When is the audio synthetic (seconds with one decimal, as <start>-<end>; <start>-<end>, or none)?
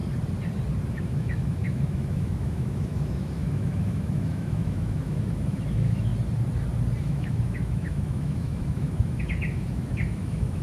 0.9-6.1; 7.0-10.6